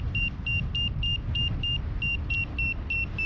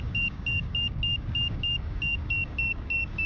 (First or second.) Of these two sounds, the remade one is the second